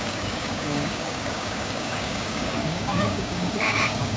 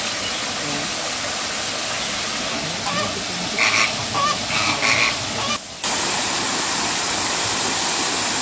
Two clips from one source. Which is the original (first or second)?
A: second